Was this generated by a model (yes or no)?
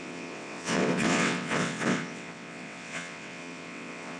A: yes